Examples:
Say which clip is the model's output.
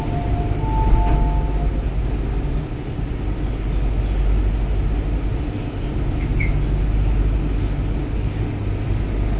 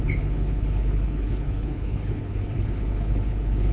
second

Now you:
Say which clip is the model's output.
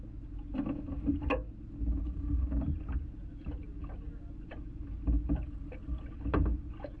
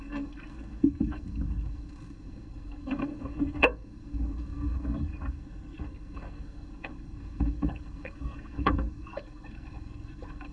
second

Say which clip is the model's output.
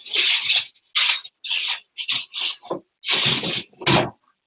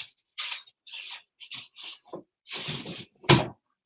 second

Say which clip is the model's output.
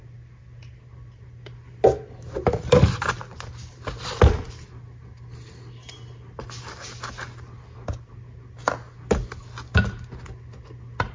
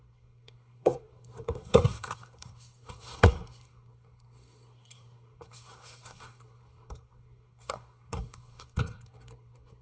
second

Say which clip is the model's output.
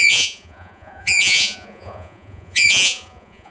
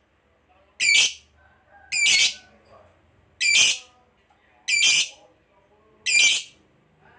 first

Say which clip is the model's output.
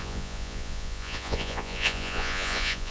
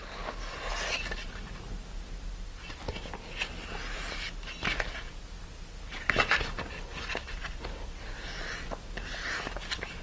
first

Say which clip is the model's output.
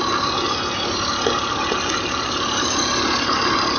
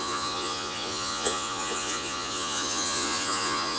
second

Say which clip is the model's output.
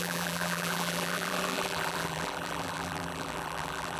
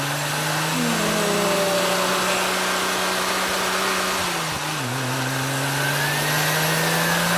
first